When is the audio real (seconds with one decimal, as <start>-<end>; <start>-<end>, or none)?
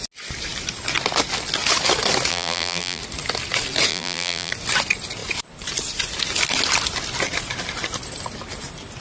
0.0-2.3; 3.0-3.9; 4.5-9.0